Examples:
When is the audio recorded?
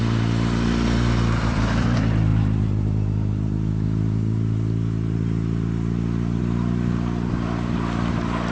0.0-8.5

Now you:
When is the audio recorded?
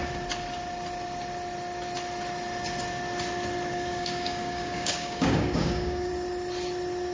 0.0-3.7; 6.1-7.1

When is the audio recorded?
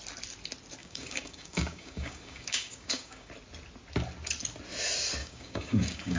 0.0-0.8; 3.3-5.2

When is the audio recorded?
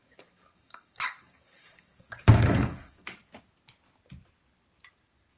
3.2-5.4